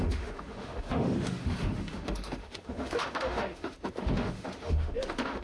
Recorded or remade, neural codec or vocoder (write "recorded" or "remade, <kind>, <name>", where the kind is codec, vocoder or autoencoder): remade, autoencoder, DAC-VAE